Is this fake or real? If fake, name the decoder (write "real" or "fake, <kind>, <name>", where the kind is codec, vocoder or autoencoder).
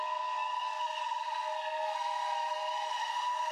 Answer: fake, codec, SNAC